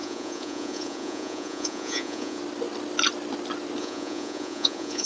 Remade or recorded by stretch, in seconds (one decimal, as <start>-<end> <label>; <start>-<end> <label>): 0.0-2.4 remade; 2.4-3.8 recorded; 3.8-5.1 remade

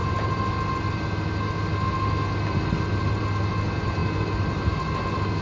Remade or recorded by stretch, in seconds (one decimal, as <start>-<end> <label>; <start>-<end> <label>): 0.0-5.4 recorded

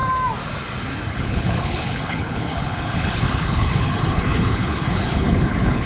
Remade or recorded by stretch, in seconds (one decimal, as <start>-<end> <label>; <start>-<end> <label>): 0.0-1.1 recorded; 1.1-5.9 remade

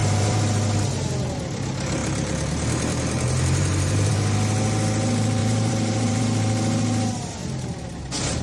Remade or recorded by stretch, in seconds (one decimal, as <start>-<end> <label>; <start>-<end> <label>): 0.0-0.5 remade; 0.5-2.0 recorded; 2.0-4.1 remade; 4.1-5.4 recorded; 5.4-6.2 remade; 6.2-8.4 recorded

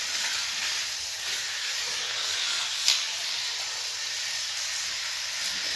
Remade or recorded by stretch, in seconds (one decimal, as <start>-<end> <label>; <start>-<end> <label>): 0.0-1.6 recorded; 1.6-3.4 remade; 3.4-5.8 recorded

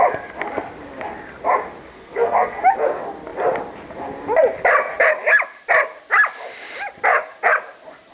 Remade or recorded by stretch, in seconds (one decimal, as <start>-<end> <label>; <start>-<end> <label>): 0.0-1.9 recorded; 1.9-2.6 remade; 2.6-8.1 recorded